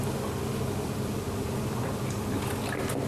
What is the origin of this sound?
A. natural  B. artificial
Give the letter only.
A